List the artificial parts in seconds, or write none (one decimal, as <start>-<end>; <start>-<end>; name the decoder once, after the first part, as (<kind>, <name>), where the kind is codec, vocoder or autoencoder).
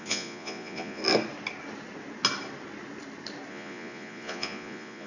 0.0-1.0 (vocoder, Vocos); 3.5-5.1